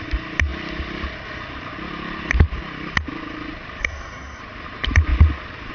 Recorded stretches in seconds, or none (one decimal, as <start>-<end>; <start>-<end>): 0.0-3.8; 4.4-5.7